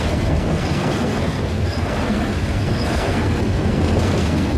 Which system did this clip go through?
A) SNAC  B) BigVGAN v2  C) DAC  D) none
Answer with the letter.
A